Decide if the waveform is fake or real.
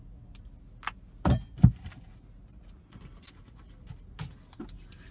real